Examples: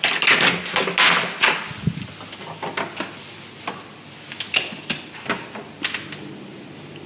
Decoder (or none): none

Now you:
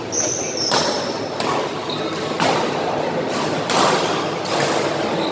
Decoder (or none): none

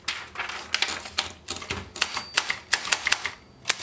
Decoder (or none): none